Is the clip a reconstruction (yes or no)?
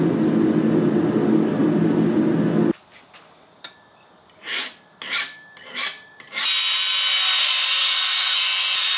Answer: no